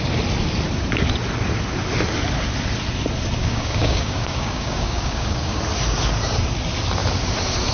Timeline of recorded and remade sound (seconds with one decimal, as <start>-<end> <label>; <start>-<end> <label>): 0.0-3.4 recorded; 3.4-5.6 remade; 5.6-7.7 recorded